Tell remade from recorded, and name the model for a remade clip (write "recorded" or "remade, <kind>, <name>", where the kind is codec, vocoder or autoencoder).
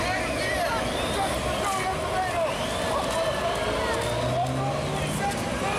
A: recorded